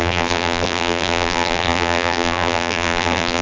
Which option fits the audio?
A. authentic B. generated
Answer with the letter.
B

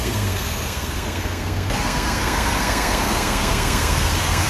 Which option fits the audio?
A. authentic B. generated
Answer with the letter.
B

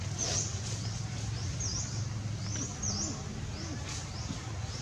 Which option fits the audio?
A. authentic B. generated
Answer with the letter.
A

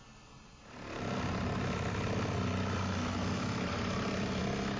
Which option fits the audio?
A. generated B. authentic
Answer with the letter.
B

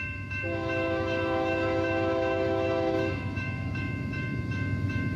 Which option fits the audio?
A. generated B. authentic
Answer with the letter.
A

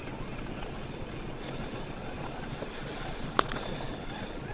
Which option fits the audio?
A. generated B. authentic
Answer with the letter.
A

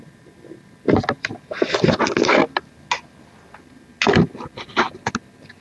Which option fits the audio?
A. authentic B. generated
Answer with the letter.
A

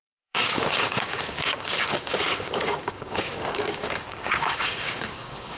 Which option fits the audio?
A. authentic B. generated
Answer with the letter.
B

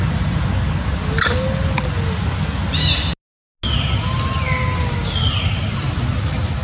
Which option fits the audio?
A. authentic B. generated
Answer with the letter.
A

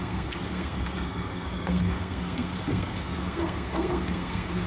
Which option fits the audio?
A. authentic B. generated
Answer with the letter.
B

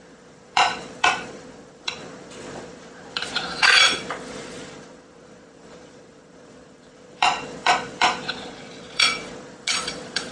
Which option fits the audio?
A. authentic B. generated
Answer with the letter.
B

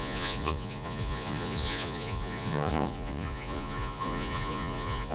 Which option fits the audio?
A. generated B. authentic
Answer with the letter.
A